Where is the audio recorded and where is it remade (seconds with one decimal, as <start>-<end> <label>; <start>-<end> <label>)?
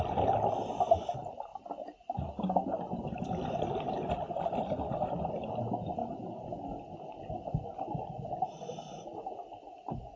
0.0-10.2 recorded